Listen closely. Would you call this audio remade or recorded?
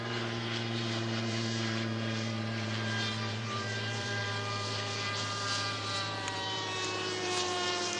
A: remade